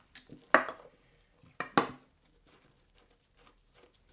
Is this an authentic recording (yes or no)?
yes